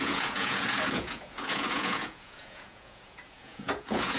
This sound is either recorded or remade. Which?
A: remade